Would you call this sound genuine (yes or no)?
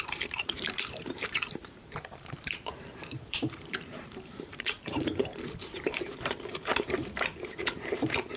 no